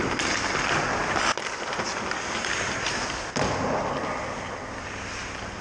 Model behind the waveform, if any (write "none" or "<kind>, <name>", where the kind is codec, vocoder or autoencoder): none